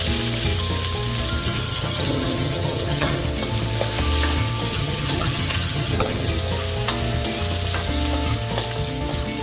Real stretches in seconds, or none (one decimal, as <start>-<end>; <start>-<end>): 0.0-1.4; 3.2-4.7; 6.3-9.4